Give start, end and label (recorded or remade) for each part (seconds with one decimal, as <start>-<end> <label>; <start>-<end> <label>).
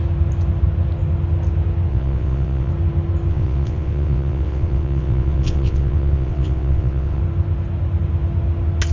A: 0.0-1.9 recorded; 1.9-2.7 remade; 2.7-3.3 recorded; 3.3-7.2 remade; 7.2-8.9 recorded